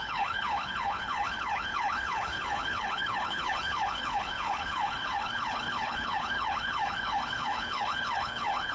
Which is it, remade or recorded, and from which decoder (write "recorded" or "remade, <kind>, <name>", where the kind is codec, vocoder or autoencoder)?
remade, codec, HILCodec